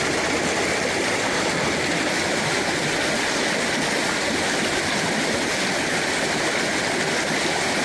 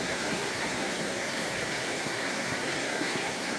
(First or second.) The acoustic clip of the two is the first